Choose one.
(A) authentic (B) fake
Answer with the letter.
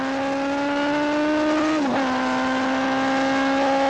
A